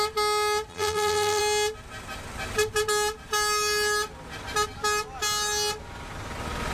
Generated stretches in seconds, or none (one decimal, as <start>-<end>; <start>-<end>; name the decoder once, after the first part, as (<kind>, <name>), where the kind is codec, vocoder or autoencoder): 0.7-1.4 (vocoder, BigVGAN v2)

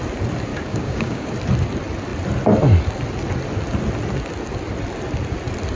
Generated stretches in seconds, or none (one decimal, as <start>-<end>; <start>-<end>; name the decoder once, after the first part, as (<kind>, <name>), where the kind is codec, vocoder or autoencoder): 0.5-1.3 (codec, DAC)

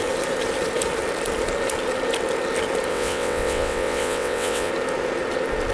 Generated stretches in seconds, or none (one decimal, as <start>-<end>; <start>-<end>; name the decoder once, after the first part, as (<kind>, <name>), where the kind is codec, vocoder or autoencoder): 2.9-4.7 (vocoder, WaveNeXt)

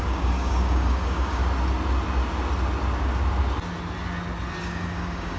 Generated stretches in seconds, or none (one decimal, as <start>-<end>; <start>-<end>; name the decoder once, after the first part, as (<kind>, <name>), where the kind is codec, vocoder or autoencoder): 0.0-1.4 (codec, DAC); 4.6-5.4